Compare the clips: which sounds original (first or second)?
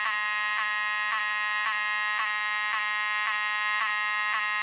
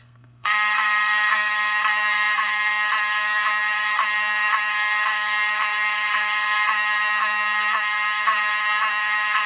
first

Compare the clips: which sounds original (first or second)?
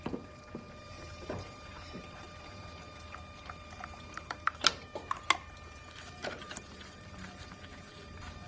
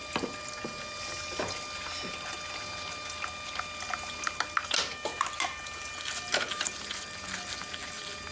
second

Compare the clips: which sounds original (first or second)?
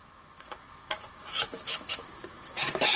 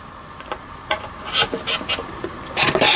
second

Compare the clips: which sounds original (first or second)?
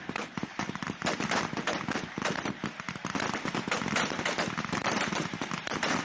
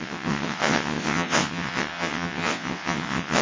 first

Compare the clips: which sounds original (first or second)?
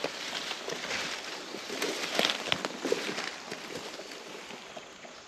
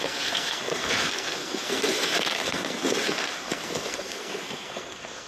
first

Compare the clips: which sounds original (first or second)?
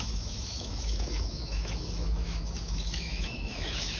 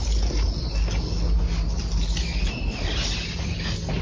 second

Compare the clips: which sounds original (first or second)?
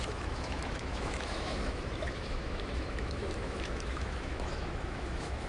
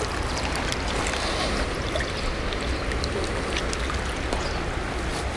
second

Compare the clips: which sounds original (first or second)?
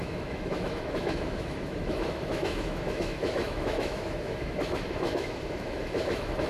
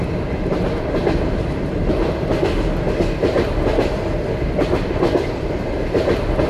second